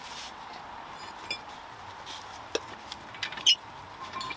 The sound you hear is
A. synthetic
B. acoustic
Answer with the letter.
B